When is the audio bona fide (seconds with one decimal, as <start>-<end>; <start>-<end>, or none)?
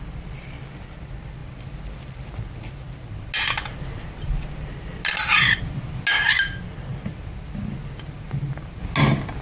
0.0-9.4